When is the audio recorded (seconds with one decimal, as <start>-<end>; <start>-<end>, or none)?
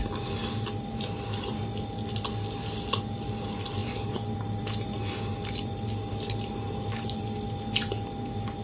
0.0-8.6